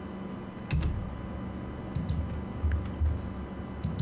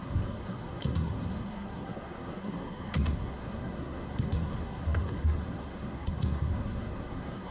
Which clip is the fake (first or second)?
second